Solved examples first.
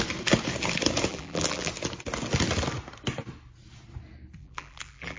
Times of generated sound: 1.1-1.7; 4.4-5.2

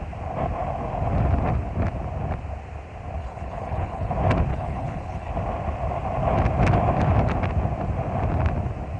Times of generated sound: 3.2-4.1; 4.5-5.3

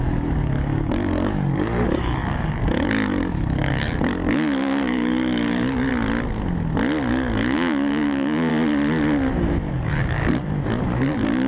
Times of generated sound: 0.0-5.9; 7.1-8.5; 9.7-11.5

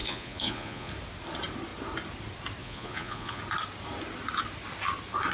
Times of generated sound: 0.0-0.9; 2.6-3.4